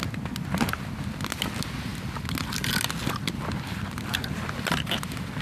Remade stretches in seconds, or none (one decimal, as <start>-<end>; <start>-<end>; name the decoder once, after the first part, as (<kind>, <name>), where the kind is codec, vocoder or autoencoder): none